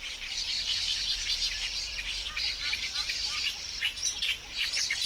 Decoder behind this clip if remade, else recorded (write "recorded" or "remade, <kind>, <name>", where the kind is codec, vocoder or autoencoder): remade, vocoder, BigVGAN v2